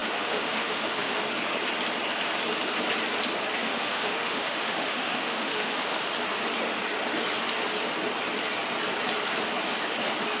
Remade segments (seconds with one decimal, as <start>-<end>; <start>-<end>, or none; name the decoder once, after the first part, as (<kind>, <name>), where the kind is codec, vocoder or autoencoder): 0.0-1.1 (autoencoder, DAC-VAE); 3.6-6.1